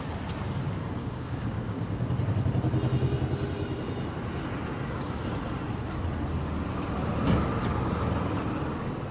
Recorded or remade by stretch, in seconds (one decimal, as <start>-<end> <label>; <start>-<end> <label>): 0.0-1.0 recorded; 1.0-2.0 remade; 2.0-9.1 recorded